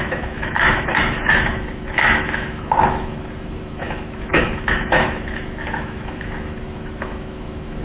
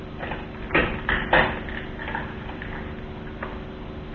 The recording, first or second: second